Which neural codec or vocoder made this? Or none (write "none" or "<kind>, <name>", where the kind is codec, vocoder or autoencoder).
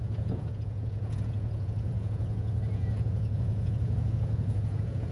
vocoder, Vocos